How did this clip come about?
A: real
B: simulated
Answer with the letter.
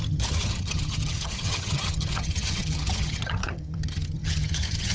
B